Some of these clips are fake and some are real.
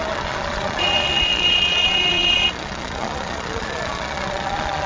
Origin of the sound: fake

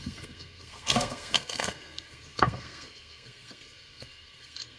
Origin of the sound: fake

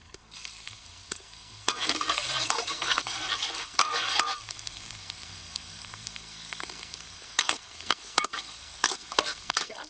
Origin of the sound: fake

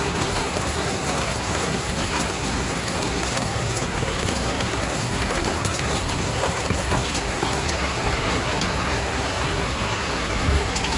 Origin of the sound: fake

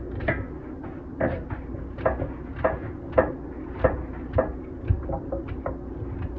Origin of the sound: real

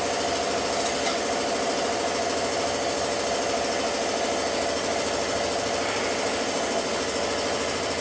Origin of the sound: real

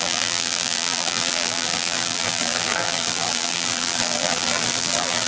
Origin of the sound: fake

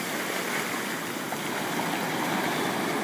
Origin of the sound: real